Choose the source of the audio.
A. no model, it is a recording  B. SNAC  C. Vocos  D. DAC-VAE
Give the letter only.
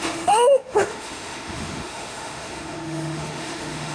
D